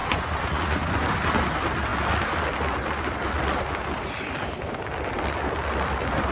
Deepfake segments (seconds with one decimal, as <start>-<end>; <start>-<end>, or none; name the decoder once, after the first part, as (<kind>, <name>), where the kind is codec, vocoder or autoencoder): 0.0-1.0 (vocoder, Vocos)